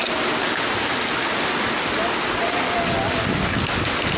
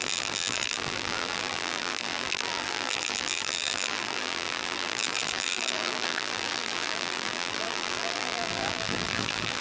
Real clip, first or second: first